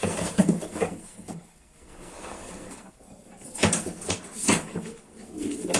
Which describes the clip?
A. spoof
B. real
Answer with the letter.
A